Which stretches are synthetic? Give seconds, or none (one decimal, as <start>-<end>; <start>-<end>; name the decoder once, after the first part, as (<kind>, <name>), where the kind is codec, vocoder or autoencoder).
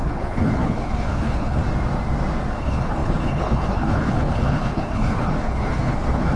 0.0-1.6 (codec, HILCodec); 2.6-6.4